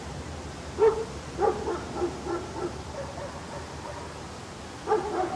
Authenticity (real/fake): real